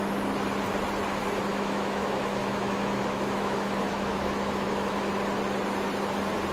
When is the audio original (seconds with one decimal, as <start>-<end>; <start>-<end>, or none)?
0.0-1.5; 5.1-6.5